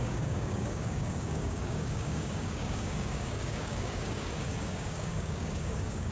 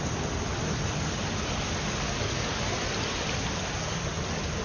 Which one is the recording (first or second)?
second